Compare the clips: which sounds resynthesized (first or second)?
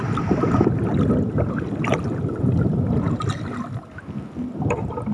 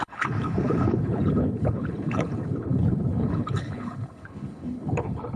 second